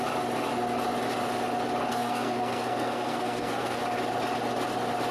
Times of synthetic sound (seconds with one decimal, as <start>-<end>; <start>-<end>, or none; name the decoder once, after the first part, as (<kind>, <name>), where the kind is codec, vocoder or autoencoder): 1.9-3.8 (codec, SNAC)

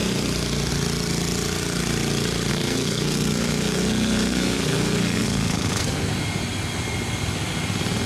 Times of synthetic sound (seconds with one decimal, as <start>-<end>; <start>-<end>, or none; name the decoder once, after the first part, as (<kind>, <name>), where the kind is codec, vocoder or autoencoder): 2.5-6.1 (codec, SNAC)